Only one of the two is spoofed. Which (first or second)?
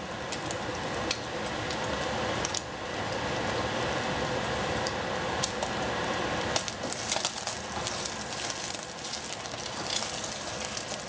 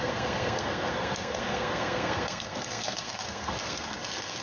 second